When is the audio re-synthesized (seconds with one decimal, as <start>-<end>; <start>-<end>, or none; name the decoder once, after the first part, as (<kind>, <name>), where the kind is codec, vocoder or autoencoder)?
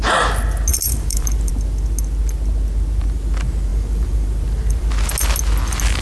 0.7-1.5 (vocoder, BigVGAN v2); 3.7-4.9